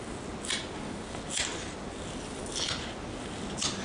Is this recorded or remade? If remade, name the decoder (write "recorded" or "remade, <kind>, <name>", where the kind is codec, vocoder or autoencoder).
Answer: recorded